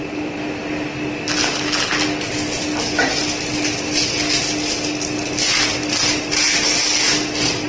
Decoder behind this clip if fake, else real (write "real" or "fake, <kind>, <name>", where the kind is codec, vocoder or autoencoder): real